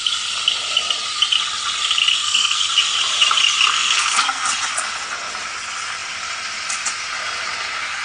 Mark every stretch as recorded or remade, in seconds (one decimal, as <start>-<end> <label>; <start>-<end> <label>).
0.0-2.1 recorded; 2.1-2.7 remade; 2.7-3.7 recorded; 3.7-4.5 remade; 4.5-8.0 recorded